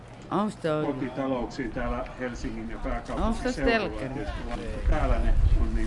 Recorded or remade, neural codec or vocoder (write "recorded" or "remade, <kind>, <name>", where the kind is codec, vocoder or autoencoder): recorded